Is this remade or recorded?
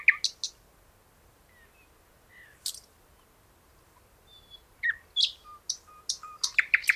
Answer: recorded